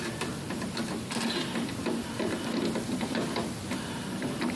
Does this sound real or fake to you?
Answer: real